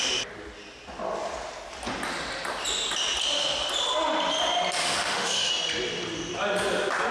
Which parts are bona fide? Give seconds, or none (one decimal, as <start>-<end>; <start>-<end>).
0.0-4.8; 5.5-7.1